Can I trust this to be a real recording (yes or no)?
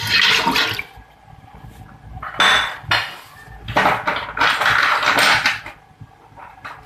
yes